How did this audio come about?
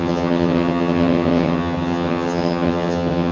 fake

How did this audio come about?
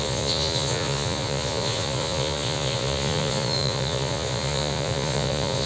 fake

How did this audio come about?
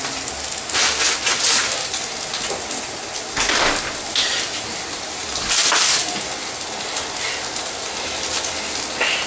real